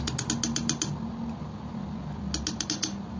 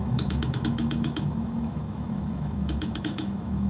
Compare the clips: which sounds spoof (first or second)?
second